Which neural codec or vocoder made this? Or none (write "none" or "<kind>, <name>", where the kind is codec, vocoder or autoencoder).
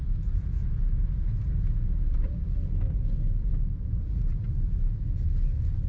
none